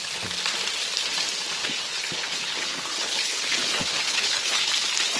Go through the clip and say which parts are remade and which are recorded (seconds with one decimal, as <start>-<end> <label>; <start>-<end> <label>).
0.0-1.6 recorded; 1.6-4.7 remade; 4.7-5.2 recorded